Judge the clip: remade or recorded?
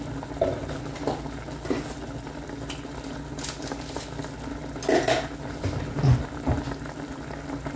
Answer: recorded